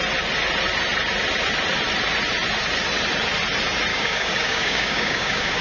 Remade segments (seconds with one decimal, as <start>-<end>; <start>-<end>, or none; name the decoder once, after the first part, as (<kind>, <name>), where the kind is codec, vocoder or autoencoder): 3.9-5.6 (codec, DAC)